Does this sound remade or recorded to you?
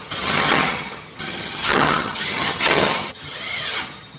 remade